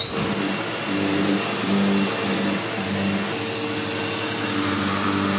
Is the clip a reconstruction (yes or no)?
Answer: no